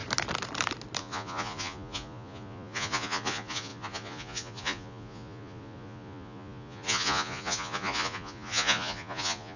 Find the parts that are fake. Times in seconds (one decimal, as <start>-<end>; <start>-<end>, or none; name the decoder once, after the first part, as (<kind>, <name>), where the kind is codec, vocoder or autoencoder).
1.0-9.6 (vocoder, Vocos)